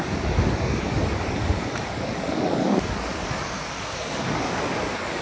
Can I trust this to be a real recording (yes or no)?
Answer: no